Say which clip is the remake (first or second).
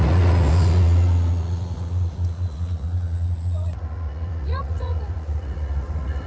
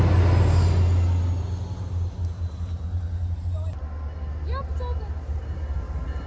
first